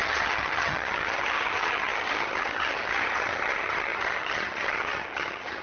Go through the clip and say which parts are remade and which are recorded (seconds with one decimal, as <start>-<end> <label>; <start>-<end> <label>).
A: 0.0-5.6 remade